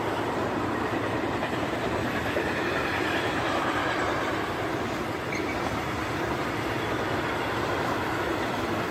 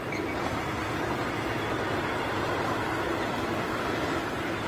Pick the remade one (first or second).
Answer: first